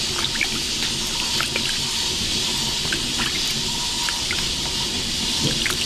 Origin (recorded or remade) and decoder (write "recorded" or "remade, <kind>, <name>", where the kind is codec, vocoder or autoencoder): recorded